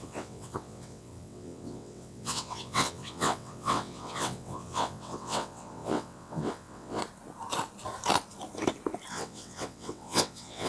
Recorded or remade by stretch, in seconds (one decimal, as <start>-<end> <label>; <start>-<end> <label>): 0.0-7.0 remade; 7.0-9.1 recorded; 9.1-10.7 remade